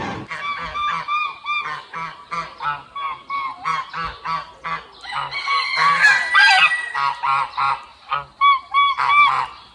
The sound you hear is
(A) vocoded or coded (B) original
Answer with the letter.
B